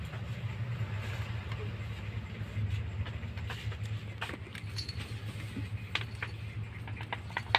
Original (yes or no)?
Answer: yes